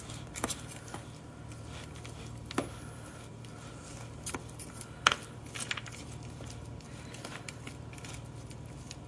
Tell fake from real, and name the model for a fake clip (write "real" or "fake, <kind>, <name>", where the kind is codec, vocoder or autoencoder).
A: real